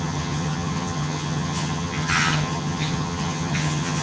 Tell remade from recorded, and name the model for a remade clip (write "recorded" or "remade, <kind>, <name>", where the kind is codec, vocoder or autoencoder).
remade, vocoder, HiFi-GAN